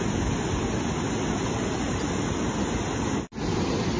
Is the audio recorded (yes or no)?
yes